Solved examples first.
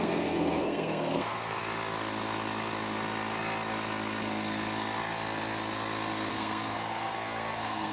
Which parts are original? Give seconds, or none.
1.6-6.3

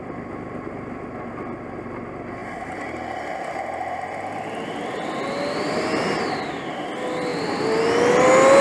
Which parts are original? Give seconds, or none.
0.0-8.6

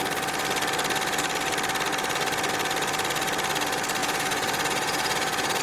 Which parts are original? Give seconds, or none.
0.0-4.0

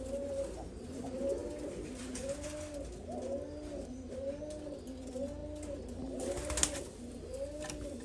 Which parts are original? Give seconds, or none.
0.0-8.0

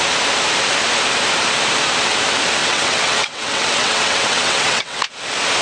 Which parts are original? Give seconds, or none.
0.0-2.6; 5.0-5.6